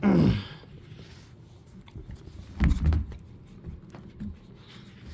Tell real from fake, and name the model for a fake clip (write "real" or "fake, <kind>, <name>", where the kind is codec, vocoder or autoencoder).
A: real